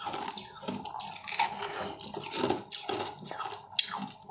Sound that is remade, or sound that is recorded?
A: recorded